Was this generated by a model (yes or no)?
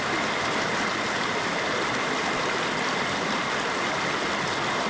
no